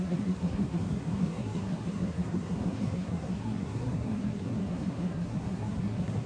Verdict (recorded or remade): remade